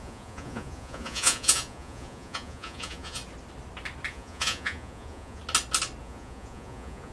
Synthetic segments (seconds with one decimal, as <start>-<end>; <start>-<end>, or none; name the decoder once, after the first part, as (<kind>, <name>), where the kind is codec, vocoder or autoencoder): 0.0-3.2 (vocoder, Vocos); 4.1-5.4; 6.0-7.1